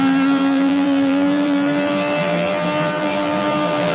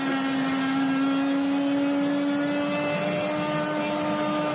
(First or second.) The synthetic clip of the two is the first